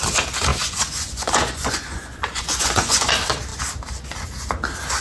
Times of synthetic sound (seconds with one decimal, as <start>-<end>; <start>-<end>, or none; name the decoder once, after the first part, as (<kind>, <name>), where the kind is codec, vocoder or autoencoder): 0.5-3.1 (vocoder, Vocos)